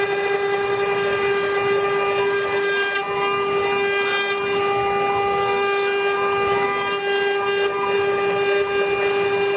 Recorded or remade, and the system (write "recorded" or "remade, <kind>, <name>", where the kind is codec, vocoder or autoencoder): recorded